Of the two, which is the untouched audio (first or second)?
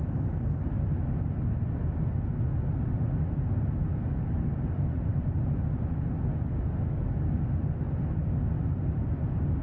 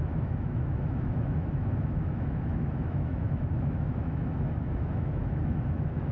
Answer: first